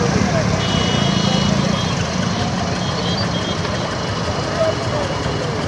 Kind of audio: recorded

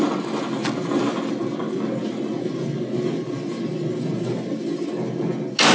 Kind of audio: recorded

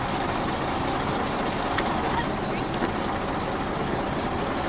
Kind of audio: recorded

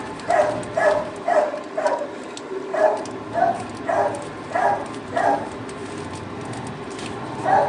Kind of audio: recorded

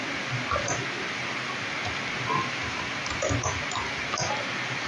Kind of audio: recorded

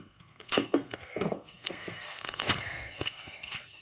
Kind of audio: remade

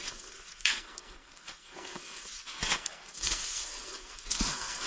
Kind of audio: remade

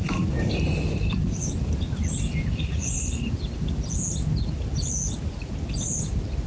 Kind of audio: recorded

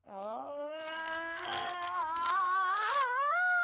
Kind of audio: remade